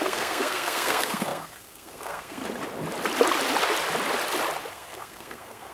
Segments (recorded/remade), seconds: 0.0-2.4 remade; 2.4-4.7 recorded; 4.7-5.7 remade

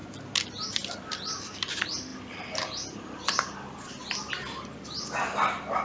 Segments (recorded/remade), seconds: 0.0-5.8 recorded